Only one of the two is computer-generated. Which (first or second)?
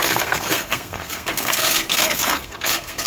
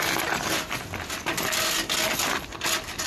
first